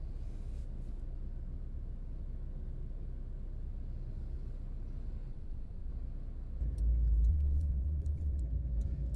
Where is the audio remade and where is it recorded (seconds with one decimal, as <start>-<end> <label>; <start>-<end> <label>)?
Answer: 0.0-5.3 recorded; 5.3-5.9 remade; 5.9-7.3 recorded; 7.3-8.4 remade; 8.4-9.2 recorded